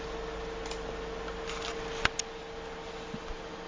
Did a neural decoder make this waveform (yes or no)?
no